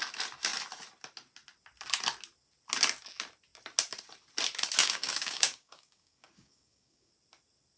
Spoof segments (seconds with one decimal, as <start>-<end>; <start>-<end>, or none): 4.8-7.1